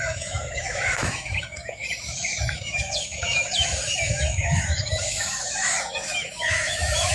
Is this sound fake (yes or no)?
yes